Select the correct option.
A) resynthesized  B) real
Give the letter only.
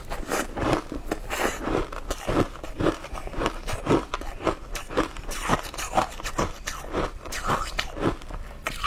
A